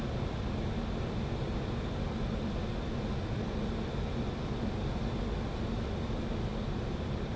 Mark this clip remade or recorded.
recorded